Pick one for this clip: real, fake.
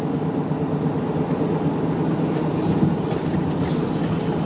real